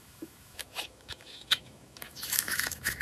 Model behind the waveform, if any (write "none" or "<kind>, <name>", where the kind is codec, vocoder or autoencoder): autoencoder, DAC-VAE